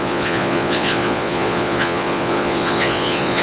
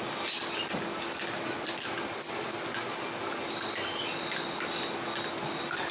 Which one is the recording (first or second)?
second